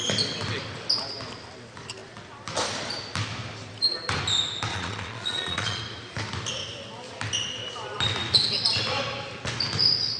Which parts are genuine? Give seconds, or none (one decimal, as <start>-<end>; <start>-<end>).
0.0-4.7; 5.8-10.2